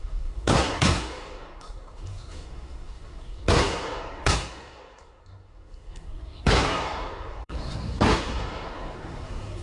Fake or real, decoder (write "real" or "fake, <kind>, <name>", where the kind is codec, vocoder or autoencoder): fake, codec, SNAC